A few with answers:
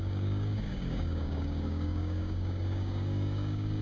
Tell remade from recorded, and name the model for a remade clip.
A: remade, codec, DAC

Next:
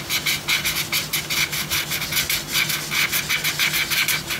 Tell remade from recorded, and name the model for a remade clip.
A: recorded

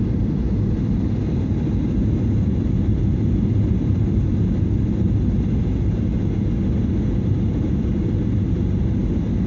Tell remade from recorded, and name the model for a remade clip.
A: recorded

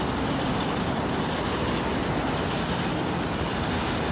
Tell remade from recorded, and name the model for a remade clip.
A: recorded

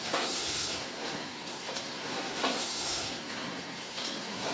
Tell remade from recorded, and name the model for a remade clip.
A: remade, codec, SNAC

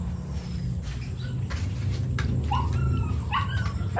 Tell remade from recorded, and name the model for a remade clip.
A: recorded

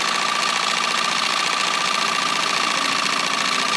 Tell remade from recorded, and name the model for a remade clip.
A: recorded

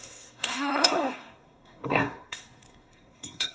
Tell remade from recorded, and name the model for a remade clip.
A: remade, codec, SNAC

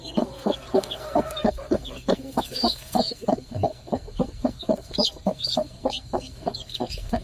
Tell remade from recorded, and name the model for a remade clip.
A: remade, codec, SNAC